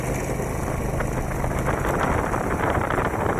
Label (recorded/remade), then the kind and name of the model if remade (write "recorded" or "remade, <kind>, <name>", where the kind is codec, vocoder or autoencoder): recorded